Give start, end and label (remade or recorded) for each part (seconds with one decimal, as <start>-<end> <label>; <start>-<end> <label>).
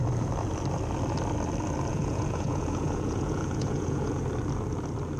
0.0-1.9 recorded; 1.9-4.2 remade; 4.2-5.2 recorded